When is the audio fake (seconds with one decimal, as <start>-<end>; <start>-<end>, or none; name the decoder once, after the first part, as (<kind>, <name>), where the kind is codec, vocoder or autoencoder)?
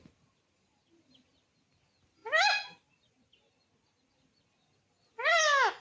none